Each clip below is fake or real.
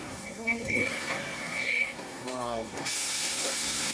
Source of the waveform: fake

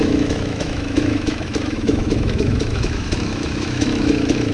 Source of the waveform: fake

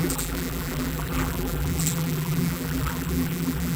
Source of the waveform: fake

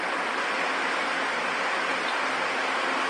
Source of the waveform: real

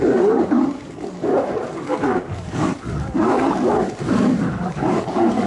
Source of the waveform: fake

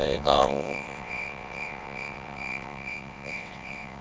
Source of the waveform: fake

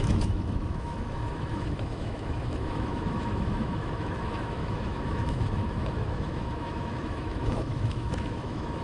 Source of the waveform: fake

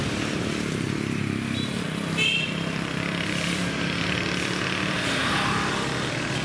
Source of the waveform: fake